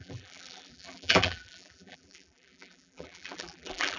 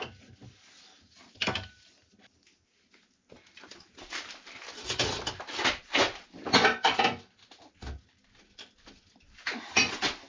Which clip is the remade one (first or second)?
first